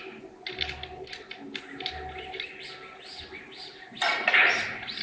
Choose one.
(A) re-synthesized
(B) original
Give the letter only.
B